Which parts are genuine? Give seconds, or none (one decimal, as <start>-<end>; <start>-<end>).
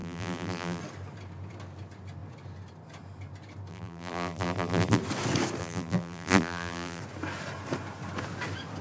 0.8-3.7; 5.0-5.6; 7.0-8.8